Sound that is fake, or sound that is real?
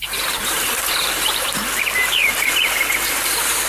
fake